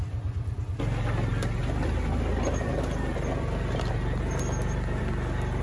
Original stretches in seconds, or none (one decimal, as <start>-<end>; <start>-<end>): 0.0-5.6